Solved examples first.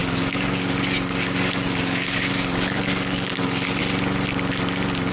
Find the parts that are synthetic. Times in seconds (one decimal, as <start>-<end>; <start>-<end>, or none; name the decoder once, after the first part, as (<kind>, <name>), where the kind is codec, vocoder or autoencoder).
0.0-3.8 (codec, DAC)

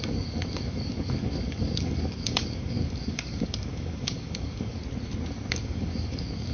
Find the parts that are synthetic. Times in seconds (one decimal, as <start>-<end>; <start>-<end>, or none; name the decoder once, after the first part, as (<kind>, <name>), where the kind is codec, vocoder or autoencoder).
0.0-4.8 (codec, DAC); 5.5-6.5

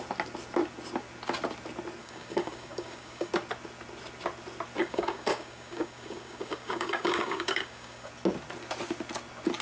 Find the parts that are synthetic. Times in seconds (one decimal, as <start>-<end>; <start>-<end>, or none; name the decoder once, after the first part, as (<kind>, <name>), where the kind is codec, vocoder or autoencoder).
2.0-3.3 (codec, DAC); 4.8-8.1